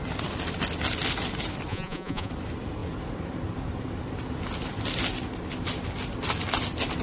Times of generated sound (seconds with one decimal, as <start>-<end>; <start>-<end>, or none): 1.7-2.3